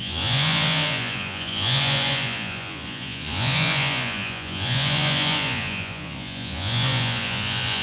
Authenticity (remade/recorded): remade